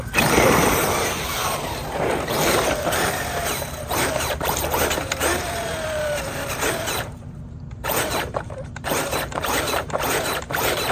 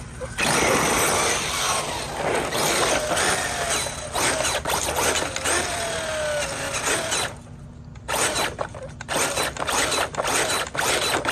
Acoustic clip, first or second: second